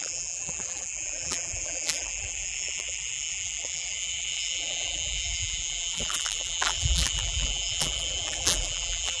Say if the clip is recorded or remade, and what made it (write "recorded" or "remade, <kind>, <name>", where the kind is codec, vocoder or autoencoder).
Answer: remade, vocoder, BigVGAN v2